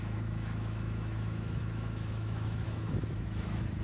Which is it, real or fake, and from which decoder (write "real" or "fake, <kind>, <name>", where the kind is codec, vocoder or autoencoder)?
fake, autoencoder, DAC-VAE